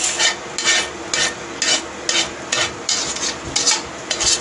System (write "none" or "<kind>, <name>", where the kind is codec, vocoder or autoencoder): none